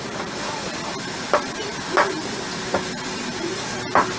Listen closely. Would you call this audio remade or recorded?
recorded